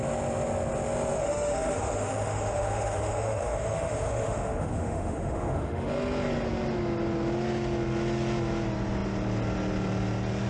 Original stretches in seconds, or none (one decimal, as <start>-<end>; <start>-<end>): 0.0-1.2; 5.9-10.5